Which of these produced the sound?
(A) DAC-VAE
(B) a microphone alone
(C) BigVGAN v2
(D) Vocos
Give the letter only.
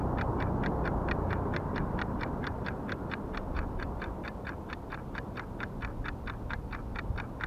B